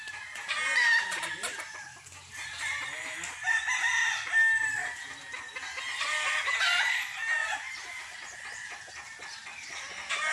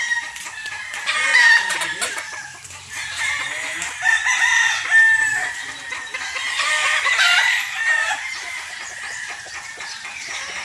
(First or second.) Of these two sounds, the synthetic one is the second